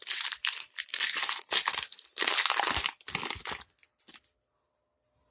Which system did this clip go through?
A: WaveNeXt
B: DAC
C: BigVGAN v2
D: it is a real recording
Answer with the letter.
D